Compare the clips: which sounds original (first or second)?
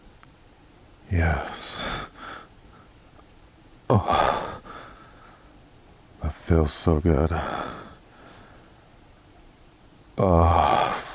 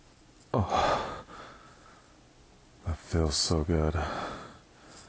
second